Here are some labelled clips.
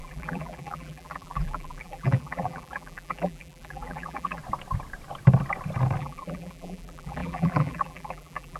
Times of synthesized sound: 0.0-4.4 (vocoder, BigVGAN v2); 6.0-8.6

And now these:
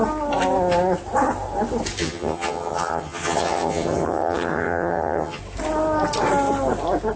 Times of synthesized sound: 2.0-5.4 (vocoder, HiFi-GAN)

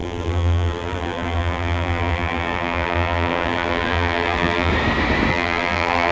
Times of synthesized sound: 0.0-4.7 (vocoder, BigVGAN v2); 5.3-6.1

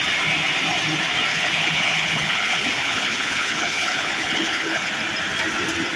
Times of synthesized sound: 1.3-4.9 (codec, HILCodec)